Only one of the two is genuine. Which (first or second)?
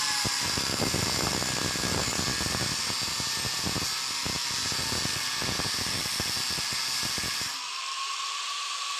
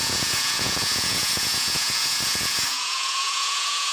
first